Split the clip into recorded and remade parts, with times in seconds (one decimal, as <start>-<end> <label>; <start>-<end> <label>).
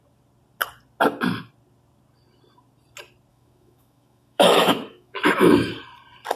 0.0-3.3 recorded; 3.3-5.7 remade; 5.7-6.4 recorded